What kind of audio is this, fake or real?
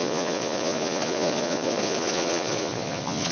fake